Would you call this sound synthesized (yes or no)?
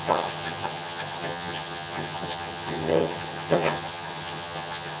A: yes